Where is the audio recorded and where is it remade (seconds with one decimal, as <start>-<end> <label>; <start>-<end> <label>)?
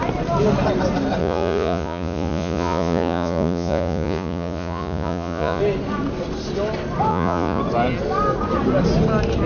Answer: 0.0-1.2 recorded; 1.2-5.6 remade; 5.6-7.1 recorded; 7.1-7.6 remade; 7.6-9.5 recorded